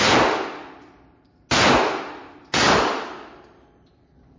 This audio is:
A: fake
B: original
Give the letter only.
B